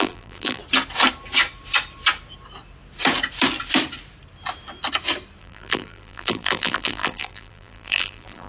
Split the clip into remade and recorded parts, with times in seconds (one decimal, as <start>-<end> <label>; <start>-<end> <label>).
0.0-0.6 remade; 0.6-5.4 recorded; 5.4-8.5 remade